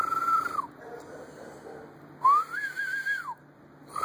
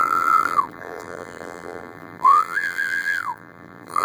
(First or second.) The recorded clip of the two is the first